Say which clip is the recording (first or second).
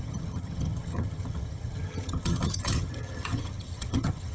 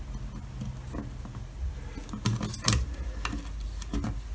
second